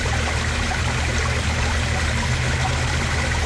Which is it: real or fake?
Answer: real